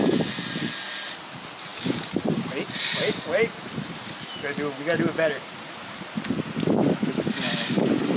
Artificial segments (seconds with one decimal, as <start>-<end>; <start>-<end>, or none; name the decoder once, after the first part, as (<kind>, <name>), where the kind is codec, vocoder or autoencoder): none